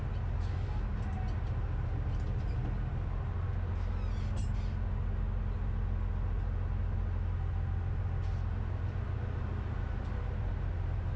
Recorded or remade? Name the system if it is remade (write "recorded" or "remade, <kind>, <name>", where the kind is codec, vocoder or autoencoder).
recorded